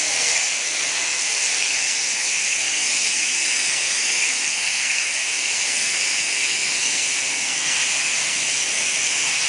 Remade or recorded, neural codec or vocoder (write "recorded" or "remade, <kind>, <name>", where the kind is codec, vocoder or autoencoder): remade, codec, SNAC